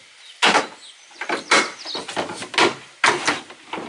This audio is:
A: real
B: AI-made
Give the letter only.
A